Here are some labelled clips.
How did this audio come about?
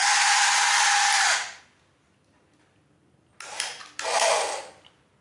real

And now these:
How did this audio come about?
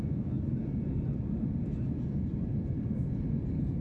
real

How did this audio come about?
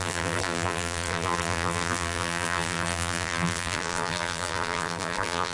fake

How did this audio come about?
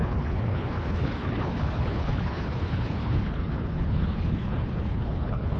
fake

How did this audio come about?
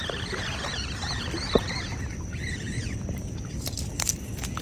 real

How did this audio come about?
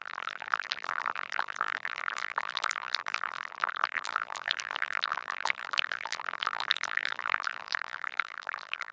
fake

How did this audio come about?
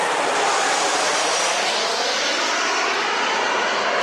real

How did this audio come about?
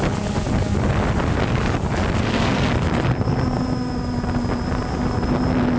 real